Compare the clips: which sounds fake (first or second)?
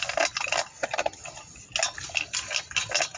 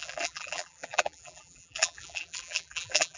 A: second